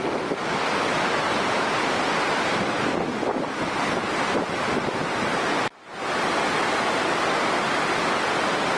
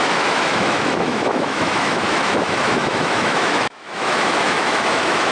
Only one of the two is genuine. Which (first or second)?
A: first